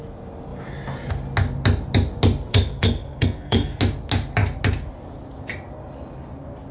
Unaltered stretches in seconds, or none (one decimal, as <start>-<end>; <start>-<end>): 0.0-2.5; 3.8-6.7